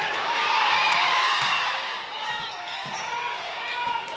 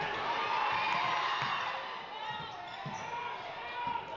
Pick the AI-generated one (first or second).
first